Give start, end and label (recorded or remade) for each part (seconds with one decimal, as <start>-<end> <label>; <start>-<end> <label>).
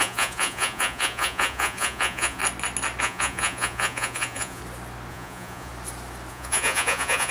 0.0-2.4 remade; 2.4-3.0 recorded; 3.0-4.6 remade; 4.6-5.1 recorded; 5.1-5.7 remade; 5.7-6.3 recorded; 6.3-7.3 remade